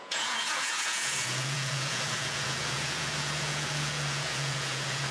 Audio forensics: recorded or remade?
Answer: remade